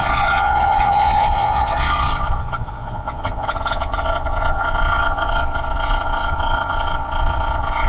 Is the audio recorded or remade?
remade